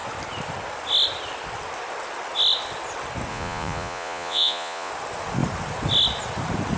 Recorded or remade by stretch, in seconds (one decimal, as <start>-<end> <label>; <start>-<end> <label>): 0.0-3.3 recorded; 3.3-4.9 remade; 4.9-6.8 recorded